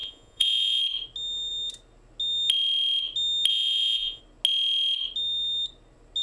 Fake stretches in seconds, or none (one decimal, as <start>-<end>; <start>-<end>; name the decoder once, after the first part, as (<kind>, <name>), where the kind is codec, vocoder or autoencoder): 0.0-0.8 (vocoder, Vocos); 3.5-4.2